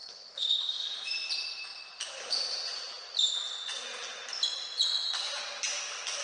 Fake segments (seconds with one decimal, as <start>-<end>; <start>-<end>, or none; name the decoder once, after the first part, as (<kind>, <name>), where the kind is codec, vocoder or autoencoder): 0.0-0.6 (codec, HILCodec)